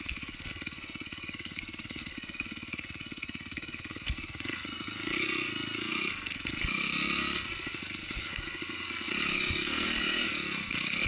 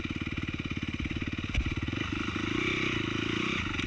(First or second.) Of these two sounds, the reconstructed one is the first